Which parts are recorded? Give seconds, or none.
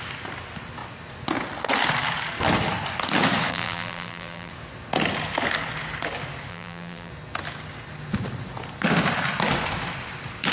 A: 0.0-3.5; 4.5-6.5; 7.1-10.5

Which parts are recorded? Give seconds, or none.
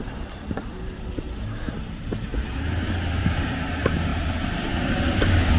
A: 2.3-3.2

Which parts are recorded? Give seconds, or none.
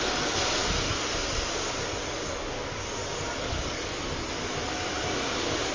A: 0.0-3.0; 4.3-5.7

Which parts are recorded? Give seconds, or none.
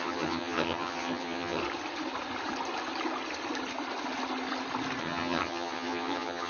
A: 1.6-5.0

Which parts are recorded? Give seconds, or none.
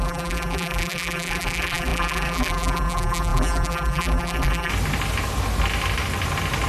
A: 4.7-6.7